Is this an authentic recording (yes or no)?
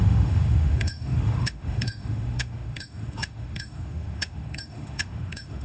no